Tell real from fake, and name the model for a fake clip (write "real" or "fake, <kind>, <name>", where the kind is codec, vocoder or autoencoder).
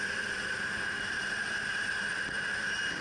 real